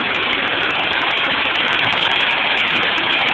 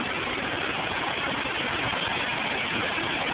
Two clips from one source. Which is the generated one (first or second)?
first